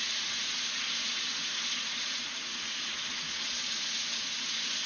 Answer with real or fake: fake